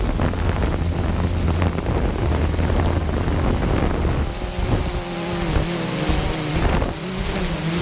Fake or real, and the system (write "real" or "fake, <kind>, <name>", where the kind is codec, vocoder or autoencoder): real